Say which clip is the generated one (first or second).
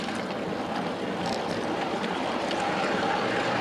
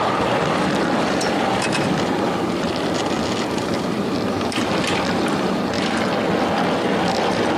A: first